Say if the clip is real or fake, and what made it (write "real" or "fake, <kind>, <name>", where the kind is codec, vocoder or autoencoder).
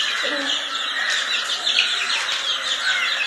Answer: real